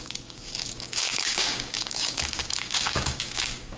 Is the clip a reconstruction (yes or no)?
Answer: yes